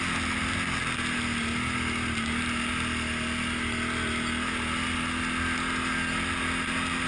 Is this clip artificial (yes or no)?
no